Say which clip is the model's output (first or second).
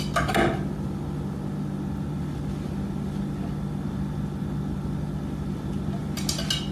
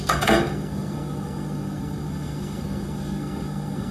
second